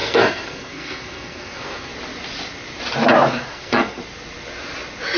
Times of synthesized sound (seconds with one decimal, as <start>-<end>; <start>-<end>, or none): 0.0-1.9; 3.5-4.0